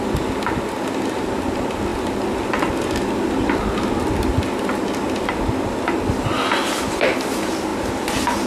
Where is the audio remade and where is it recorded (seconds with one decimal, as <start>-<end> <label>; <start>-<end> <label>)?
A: 0.0-8.5 recorded